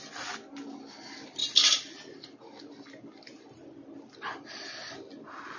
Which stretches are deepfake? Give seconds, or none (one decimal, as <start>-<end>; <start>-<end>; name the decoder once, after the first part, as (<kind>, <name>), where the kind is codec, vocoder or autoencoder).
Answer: none